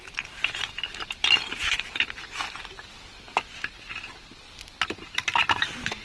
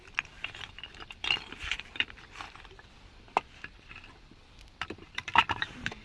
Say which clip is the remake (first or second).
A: second